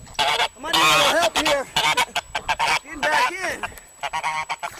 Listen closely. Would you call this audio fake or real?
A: real